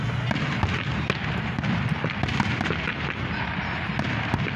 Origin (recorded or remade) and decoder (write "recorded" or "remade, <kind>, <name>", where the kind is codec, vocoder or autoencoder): recorded